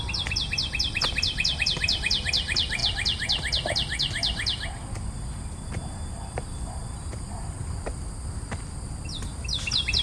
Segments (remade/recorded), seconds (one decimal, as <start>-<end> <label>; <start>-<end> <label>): 0.0-10.0 recorded